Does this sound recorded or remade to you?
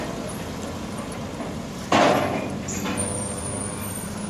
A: recorded